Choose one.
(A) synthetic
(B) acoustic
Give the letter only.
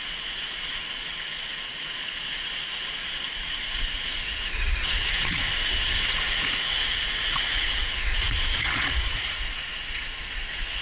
A